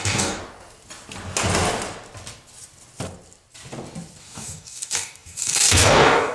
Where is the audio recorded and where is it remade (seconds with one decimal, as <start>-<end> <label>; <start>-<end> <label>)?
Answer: 0.0-0.4 remade; 0.4-4.2 recorded; 4.2-6.3 remade